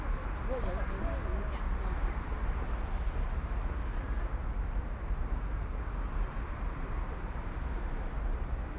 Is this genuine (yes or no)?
yes